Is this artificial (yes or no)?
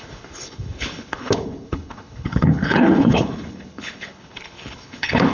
yes